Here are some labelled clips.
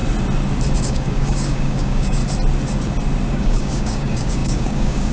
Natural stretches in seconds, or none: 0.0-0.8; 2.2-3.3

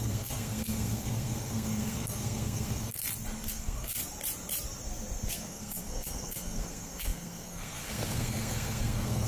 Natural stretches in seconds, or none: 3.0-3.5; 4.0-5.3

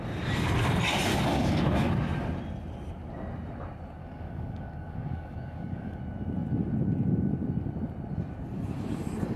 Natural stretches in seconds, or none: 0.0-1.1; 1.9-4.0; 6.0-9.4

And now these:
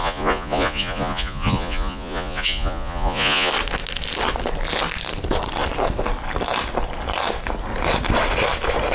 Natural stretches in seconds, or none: 3.5-8.9

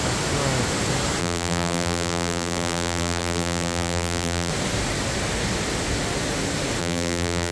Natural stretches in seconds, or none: 0.0-1.2; 4.5-6.8

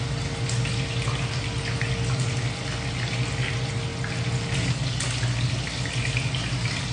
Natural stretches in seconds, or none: 0.0-6.9

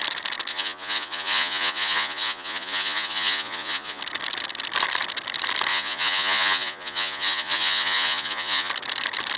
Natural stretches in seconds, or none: 0.0-0.5; 4.0-5.7; 8.7-9.4